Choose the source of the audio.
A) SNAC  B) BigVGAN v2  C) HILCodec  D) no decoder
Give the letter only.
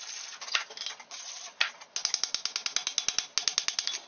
D